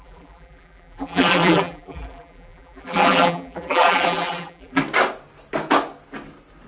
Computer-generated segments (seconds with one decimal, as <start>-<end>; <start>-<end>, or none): 0.0-4.8